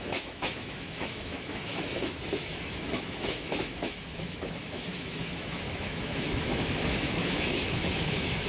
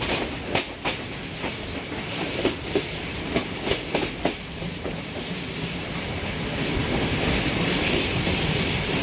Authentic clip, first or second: second